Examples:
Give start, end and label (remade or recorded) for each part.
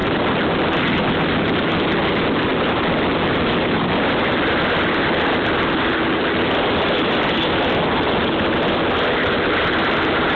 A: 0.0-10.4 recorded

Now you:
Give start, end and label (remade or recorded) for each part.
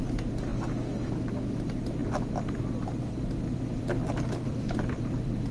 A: 0.0-0.5 remade; 0.5-1.1 recorded; 1.1-5.5 remade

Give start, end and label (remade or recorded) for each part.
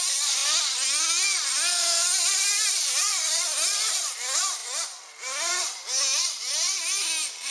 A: 0.0-7.5 recorded